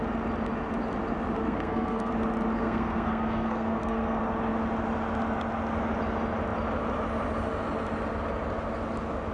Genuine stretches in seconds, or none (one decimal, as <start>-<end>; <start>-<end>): 0.0-1.4; 2.1-2.6; 4.2-9.3